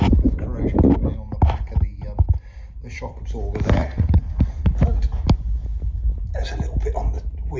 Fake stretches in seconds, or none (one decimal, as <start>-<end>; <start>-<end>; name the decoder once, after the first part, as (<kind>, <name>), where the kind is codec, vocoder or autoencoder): 3.8-4.7 (vocoder, Vocos)